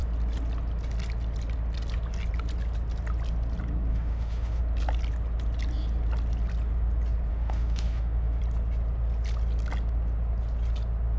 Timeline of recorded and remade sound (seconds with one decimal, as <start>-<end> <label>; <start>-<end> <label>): 0.0-3.9 recorded; 3.9-4.6 remade; 4.6-7.3 recorded; 7.3-8.4 remade; 8.4-11.2 recorded